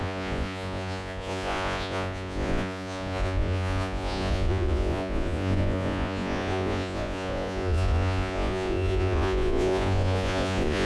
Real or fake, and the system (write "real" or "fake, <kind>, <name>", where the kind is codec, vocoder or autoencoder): fake, vocoder, Vocos